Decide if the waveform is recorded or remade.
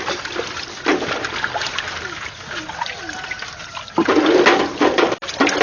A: recorded